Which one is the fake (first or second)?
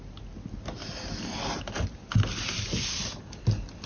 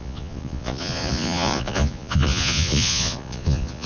second